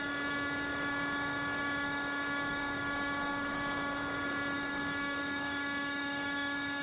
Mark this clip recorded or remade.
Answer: remade